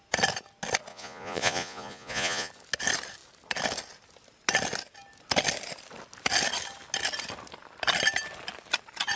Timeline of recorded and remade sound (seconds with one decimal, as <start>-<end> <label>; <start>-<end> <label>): 0.0-0.9 recorded; 0.9-2.5 remade; 2.5-9.2 recorded